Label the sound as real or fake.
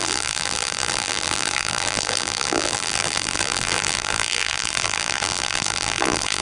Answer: fake